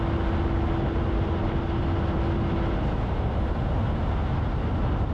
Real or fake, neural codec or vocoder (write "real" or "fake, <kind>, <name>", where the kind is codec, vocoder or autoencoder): real